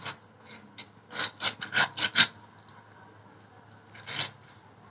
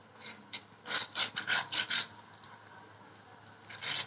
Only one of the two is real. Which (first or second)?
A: first